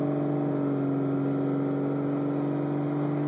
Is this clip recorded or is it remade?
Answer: recorded